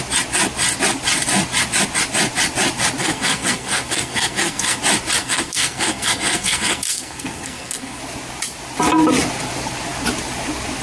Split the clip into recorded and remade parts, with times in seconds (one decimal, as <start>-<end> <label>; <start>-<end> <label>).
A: 0.0-3.0 recorded; 3.0-4.8 remade; 4.8-5.2 recorded; 5.2-8.0 remade; 8.0-10.8 recorded